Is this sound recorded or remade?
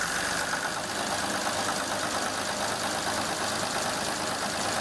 recorded